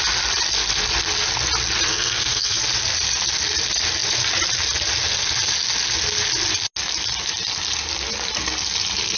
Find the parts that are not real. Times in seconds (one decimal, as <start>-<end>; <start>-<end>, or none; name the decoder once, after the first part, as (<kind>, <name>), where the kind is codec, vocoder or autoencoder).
1.9-2.6 (codec, SNAC)